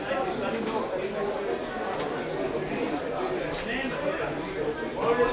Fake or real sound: real